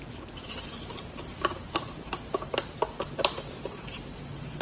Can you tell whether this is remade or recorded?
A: remade